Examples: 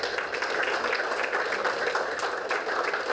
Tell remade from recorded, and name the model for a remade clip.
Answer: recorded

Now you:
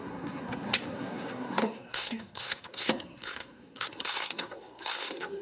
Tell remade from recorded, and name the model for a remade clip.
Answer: remade, codec, SNAC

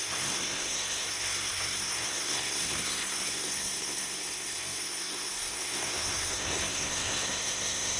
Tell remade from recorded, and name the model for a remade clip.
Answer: remade, codec, SNAC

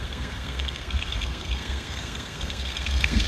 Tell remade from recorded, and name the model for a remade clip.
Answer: remade, codec, SNAC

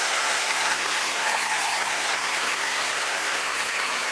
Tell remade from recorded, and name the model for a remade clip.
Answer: remade, codec, SNAC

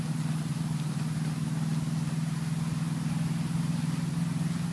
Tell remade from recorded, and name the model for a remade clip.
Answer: recorded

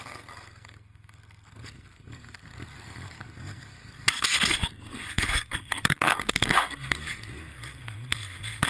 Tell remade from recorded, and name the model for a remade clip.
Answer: remade, codec, SNAC